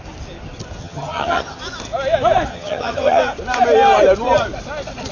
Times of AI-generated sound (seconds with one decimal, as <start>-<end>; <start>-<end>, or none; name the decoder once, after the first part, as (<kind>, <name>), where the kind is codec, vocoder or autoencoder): 0.8-1.6 (vocoder, HiFi-GAN); 2.5-3.2